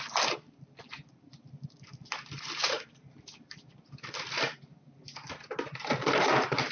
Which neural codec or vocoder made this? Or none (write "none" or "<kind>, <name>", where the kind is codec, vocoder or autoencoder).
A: none